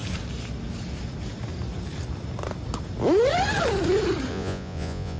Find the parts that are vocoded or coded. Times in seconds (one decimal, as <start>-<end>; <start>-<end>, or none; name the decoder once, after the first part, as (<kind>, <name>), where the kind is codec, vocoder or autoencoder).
4.3-5.2 (vocoder, Vocos)